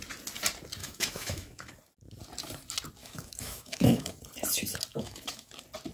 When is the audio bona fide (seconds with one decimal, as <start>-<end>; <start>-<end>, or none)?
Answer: 0.0-0.8; 1.7-3.0; 4.2-4.9; 5.5-5.9